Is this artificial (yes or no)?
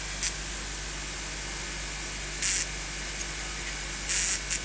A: no